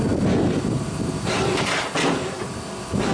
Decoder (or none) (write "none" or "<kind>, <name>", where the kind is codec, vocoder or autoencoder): none